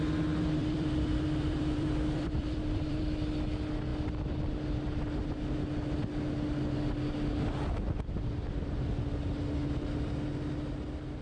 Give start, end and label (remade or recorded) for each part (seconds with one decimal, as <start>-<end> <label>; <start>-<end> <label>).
0.0-0.6 recorded; 0.6-3.0 remade; 3.0-11.2 recorded